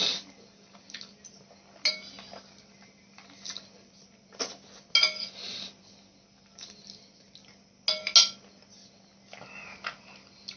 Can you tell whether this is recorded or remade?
recorded